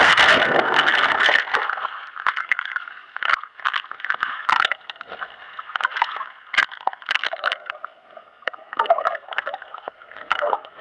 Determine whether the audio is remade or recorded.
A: remade